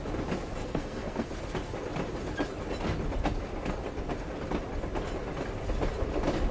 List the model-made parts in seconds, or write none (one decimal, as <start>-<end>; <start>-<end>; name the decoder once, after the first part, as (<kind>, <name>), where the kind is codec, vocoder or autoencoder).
0.6-1.3 (codec, SNAC)